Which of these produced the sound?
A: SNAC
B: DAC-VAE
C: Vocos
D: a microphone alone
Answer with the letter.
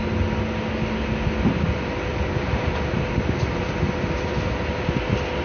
D